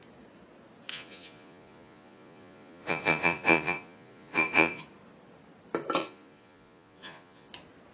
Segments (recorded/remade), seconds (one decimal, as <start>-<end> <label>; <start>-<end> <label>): 0.0-0.9 recorded; 0.9-4.8 remade; 4.8-6.0 recorded; 6.0-7.5 remade; 7.5-7.9 recorded